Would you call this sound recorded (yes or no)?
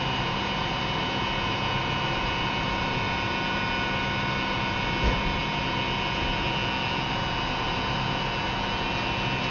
yes